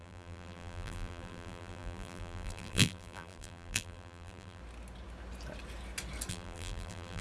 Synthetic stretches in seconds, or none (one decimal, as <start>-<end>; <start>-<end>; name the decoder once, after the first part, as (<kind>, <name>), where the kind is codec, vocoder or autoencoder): 0.0-4.6 (vocoder, BigVGAN v2); 6.3-7.2